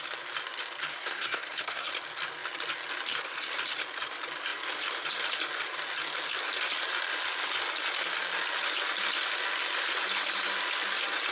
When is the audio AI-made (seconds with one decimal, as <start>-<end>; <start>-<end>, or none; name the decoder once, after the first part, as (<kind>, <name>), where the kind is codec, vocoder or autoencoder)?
0.9-1.9 (codec, SNAC)